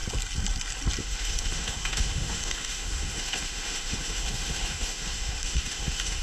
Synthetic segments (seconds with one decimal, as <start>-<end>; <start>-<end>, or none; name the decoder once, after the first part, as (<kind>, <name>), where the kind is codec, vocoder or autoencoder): 1.0-6.2 (autoencoder, DAC-VAE)